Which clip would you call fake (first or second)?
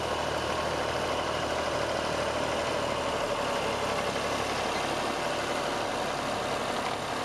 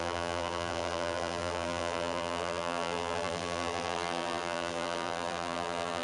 second